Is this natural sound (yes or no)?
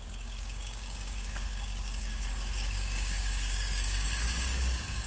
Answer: no